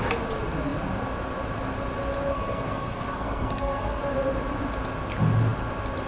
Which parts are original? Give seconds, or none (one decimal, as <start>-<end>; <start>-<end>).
0.0-2.3; 4.0-6.1